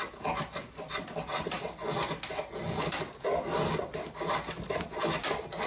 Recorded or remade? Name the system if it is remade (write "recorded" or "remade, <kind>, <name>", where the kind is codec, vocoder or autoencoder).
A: recorded